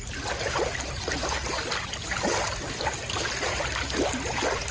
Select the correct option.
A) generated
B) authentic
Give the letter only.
B